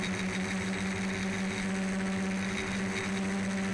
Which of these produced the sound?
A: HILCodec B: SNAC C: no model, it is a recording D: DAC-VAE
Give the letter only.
C